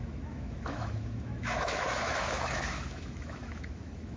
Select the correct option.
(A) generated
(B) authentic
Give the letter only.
A